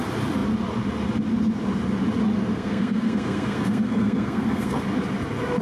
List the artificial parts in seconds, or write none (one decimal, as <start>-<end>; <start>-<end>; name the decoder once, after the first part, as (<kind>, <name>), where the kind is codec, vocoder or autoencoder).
2.5-4.8 (codec, SNAC)